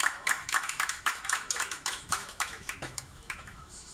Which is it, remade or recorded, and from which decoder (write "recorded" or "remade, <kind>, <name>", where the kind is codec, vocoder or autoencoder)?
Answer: remade, autoencoder, DAC-VAE